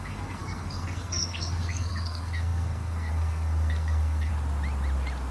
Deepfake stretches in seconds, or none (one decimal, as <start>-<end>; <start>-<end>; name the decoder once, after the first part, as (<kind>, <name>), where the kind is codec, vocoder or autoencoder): 0.0-4.3 (codec, SNAC)